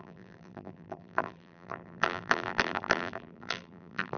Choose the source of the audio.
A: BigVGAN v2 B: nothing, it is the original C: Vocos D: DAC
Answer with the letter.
A